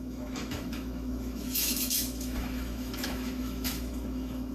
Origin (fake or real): fake